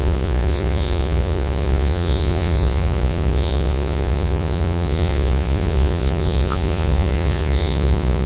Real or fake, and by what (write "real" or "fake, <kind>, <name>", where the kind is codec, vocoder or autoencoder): fake, vocoder, Vocos